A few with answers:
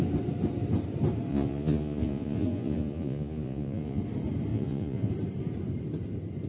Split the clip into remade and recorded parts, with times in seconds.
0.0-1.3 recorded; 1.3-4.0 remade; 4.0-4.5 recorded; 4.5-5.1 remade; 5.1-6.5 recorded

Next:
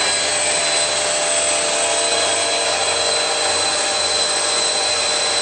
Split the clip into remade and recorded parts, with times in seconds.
0.0-2.1 recorded; 2.1-5.4 remade

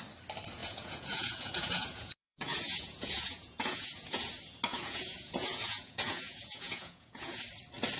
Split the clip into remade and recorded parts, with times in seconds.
0.0-0.6 recorded; 0.6-4.3 remade; 4.3-4.7 recorded; 4.7-7.4 remade; 7.4-8.0 recorded

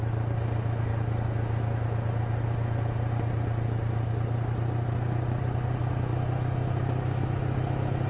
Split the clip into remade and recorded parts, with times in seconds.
0.0-8.1 recorded

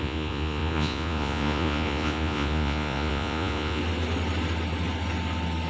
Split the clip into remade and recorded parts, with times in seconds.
0.0-3.8 remade; 3.8-5.7 recorded

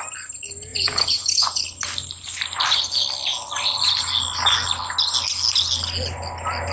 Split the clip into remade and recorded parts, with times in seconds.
0.0-0.7 recorded; 0.7-1.6 remade; 1.6-6.7 recorded